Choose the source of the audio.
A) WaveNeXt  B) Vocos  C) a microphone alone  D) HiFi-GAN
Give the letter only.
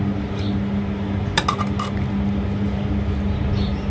C